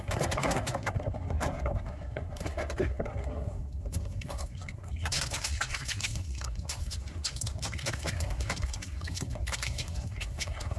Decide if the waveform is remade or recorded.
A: remade